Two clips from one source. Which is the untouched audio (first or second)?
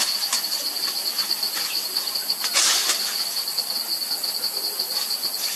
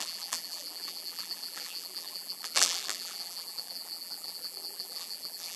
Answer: first